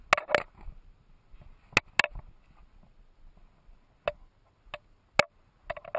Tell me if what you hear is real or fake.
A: real